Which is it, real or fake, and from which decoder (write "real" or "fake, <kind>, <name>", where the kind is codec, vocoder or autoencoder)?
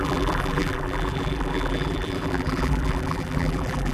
fake, vocoder, BigVGAN v2